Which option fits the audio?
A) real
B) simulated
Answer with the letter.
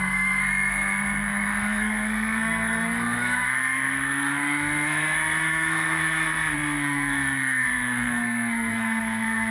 B